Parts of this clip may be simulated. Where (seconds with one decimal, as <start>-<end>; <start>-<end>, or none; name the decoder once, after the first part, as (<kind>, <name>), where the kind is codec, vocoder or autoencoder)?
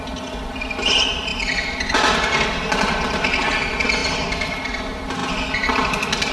none